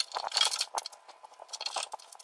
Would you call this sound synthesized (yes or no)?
no